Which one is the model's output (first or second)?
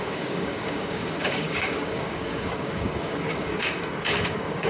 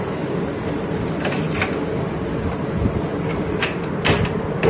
first